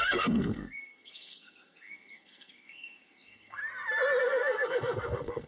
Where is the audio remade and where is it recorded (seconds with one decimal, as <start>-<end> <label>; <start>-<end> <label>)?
0.0-3.6 remade; 3.6-4.2 recorded; 4.2-5.5 remade